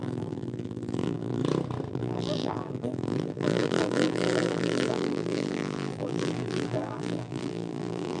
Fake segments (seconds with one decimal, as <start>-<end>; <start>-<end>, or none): 0.0-1.4; 1.9-8.2